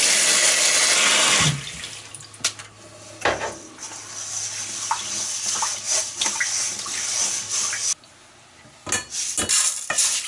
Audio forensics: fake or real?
real